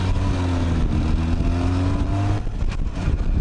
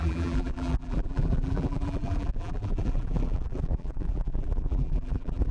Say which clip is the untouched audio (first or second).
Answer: first